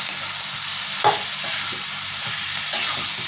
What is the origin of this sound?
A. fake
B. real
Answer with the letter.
B